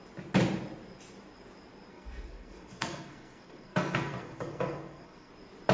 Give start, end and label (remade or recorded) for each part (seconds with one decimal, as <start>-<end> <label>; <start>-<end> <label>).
0.0-1.9 recorded; 1.9-5.3 remade; 5.3-5.7 recorded